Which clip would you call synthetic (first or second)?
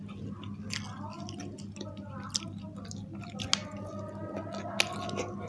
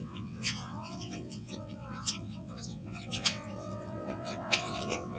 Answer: second